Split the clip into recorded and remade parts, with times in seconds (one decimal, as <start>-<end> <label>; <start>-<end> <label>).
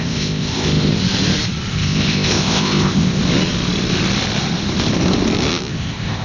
0.0-0.9 remade; 0.9-1.7 recorded; 1.7-3.2 remade; 3.2-5.7 recorded; 5.7-6.2 remade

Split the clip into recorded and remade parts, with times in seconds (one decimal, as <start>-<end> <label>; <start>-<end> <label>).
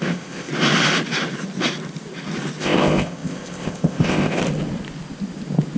0.0-0.5 remade; 0.5-2.6 recorded; 2.6-4.4 remade; 4.4-5.8 recorded